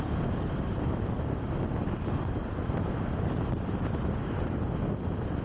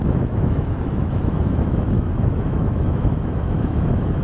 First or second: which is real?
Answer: first